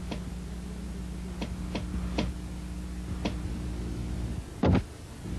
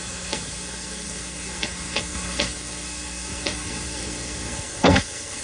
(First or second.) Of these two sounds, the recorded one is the first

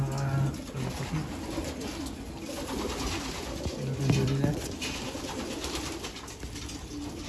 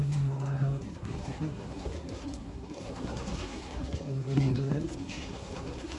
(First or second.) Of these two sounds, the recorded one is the first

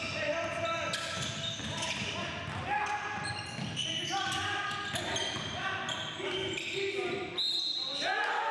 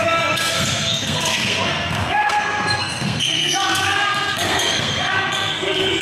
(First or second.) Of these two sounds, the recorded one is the first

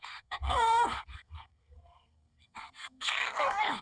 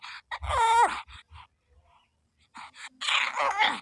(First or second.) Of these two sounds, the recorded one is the second